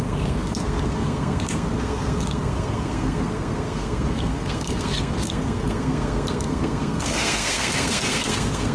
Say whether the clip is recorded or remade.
remade